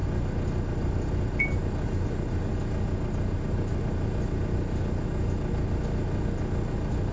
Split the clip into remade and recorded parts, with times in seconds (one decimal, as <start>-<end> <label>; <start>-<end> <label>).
0.0-7.1 recorded